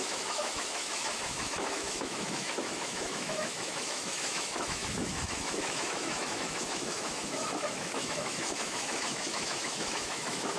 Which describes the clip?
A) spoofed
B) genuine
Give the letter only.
A